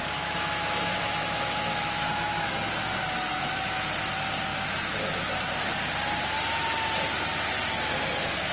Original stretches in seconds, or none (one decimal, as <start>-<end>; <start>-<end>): 3.5-4.5; 5.4-8.5